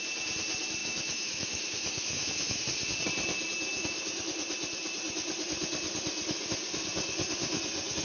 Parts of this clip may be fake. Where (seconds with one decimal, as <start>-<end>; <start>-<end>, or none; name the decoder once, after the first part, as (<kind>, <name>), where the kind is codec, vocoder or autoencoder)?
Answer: 0.8-2.6 (autoencoder, DAC-VAE); 3.7-4.2